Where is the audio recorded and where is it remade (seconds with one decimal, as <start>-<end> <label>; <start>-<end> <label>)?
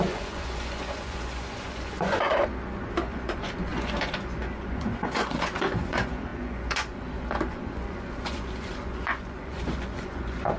0.0-10.6 remade